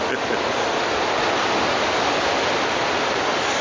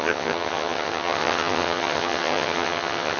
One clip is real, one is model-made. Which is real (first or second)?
first